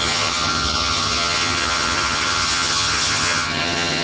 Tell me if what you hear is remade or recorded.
remade